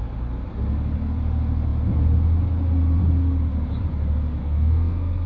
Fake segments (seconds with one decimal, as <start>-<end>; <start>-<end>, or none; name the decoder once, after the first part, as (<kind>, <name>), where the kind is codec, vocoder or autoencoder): 4.4-5.3 (codec, SNAC)